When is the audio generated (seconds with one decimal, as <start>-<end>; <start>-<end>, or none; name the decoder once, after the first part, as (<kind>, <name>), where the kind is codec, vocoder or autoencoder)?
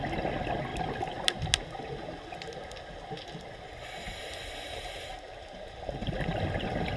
none